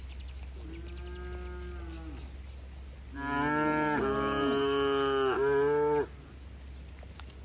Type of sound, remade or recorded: recorded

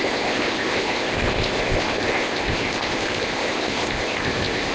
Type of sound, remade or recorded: remade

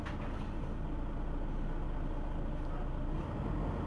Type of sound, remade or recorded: recorded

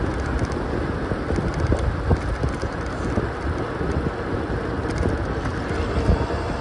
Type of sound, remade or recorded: recorded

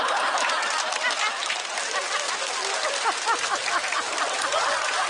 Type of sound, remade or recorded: recorded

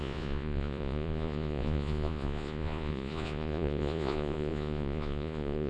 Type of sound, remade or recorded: remade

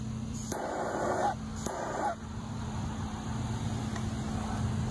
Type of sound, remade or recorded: recorded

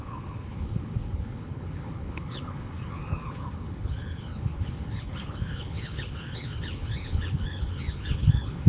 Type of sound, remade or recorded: remade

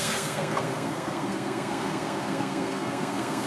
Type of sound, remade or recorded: remade